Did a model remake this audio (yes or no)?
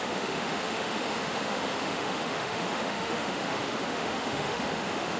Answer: yes